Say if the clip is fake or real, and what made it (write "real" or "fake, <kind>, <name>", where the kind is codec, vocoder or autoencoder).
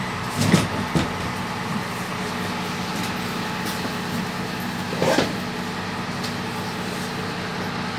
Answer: real